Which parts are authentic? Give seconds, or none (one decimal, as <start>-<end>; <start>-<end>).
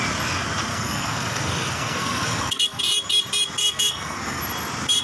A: 0.0-0.7; 2.8-3.6; 4.4-5.0